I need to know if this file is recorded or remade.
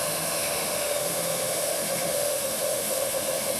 remade